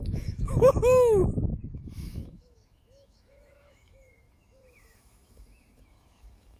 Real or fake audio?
fake